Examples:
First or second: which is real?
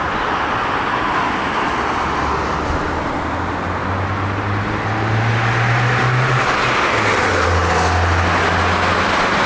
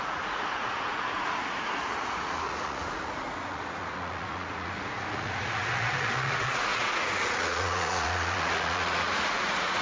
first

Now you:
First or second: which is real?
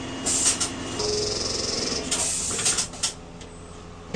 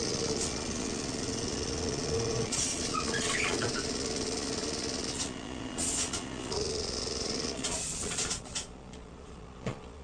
first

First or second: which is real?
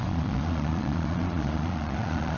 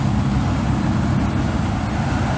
second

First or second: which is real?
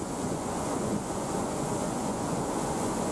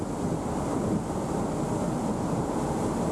second